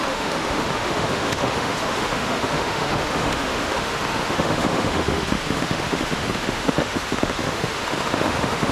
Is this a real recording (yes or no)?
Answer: no